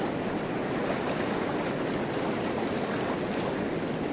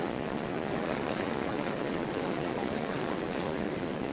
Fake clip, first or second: second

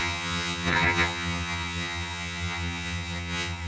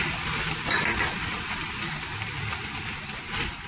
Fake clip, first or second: first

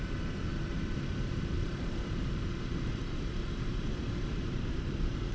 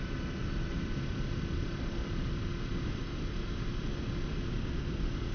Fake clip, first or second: first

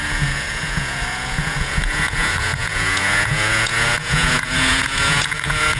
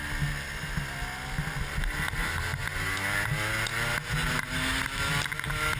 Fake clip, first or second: first